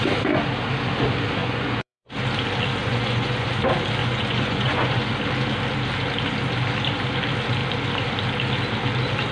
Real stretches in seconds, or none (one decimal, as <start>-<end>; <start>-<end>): 0.0-1.4; 2.1-2.8; 3.5-4.0; 5.1-9.3